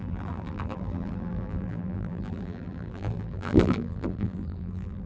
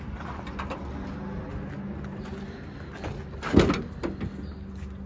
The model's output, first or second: first